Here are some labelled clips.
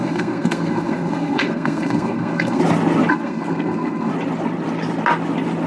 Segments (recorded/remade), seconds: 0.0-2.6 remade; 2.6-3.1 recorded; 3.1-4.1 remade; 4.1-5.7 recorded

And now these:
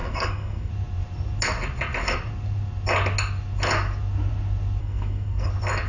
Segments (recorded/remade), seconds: 0.0-0.7 remade; 0.7-4.8 recorded; 4.8-5.5 remade; 5.5-5.9 recorded

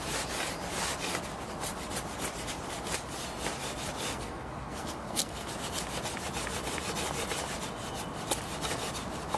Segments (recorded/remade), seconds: 0.0-4.1 recorded; 4.1-5.5 remade; 5.5-9.4 recorded